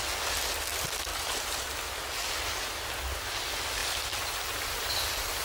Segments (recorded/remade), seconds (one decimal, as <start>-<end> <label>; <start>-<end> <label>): 0.0-1.1 recorded; 1.1-1.7 remade; 1.7-5.4 recorded